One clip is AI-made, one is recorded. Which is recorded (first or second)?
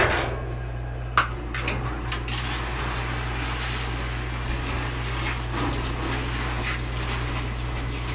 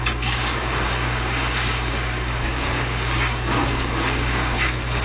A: first